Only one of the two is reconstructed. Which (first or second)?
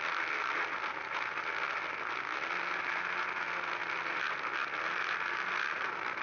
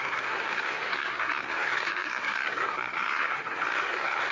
second